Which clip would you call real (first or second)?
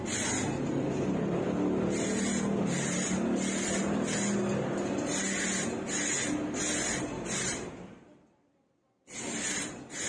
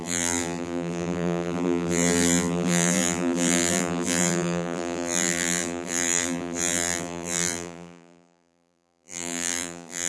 first